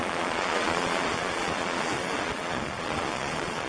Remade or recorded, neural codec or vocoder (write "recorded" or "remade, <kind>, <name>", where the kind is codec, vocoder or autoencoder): remade, vocoder, Vocos